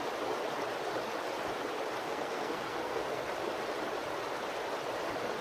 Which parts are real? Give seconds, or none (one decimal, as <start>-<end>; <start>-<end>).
0.0-2.0; 3.3-5.4